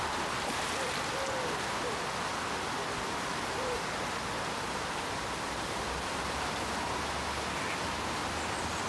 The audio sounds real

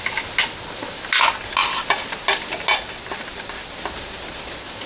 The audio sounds real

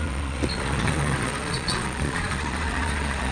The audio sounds fake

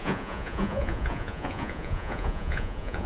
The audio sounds fake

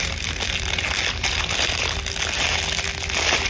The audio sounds real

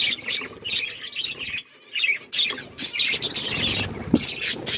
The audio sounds real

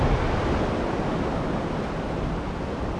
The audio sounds real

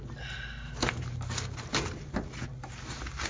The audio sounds real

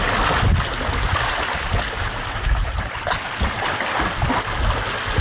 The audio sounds real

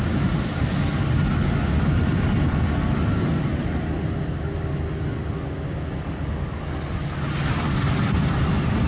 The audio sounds real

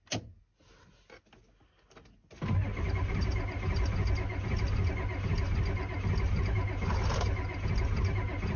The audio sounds real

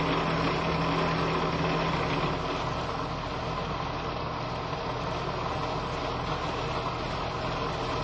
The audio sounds real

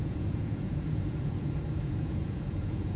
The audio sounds fake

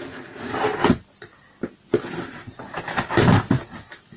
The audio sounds real